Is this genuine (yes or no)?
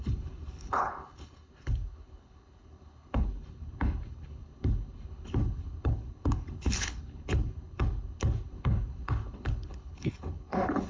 no